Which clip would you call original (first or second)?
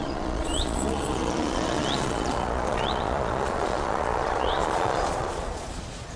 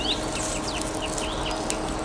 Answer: second